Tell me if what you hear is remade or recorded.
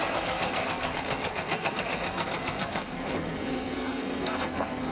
remade